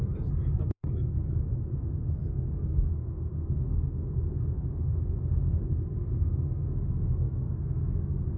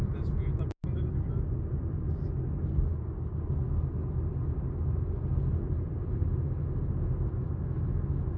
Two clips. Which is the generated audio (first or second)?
first